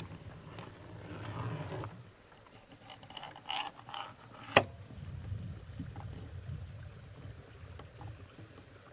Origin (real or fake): real